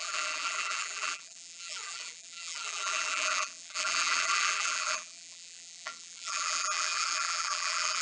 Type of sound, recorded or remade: remade